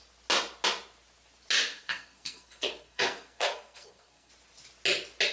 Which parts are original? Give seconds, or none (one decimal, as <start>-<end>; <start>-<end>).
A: 0.0-1.7; 4.3-5.3